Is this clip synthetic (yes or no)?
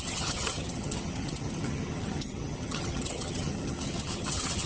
yes